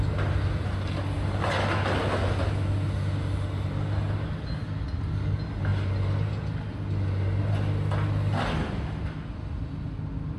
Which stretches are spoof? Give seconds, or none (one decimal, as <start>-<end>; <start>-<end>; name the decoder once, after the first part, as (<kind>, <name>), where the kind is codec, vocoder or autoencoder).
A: none